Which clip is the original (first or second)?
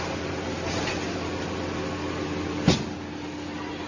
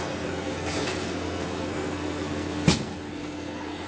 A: first